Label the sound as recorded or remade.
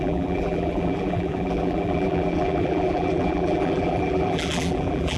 remade